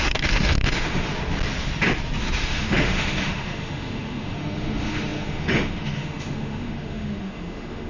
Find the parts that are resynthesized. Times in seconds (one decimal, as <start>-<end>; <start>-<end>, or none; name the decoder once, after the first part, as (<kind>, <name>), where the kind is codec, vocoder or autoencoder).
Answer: 0.0-1.1 (autoencoder, DAC-VAE); 2.2-7.9